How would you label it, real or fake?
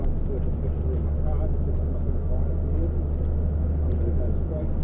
real